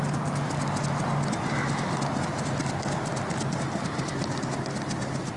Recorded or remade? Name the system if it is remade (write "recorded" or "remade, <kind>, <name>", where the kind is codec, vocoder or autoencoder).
recorded